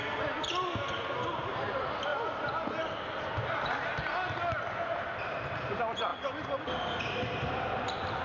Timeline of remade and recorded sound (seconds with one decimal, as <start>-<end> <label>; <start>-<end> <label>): 0.0-8.2 recorded